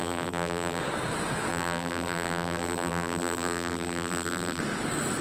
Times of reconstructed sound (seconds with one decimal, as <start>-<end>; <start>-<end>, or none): 0.0-0.8; 1.5-4.6